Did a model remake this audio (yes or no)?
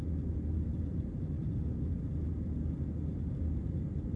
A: no